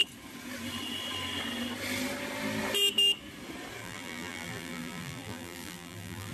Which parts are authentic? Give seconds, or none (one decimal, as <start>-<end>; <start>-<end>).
0.0-3.8